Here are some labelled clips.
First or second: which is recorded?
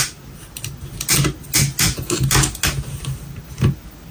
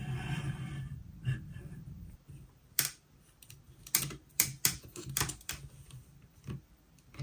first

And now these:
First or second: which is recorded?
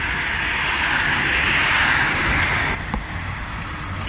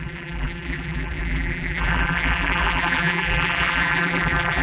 first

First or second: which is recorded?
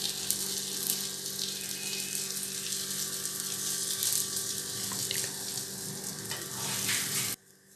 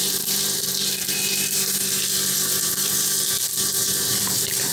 first